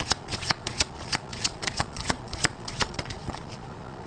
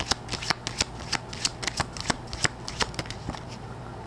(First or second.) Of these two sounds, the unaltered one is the second